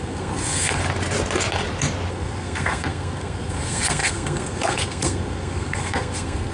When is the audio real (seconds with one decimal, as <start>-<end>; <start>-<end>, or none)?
0.8-2.1